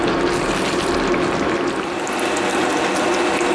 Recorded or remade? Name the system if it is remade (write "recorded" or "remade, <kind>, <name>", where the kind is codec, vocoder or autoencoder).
recorded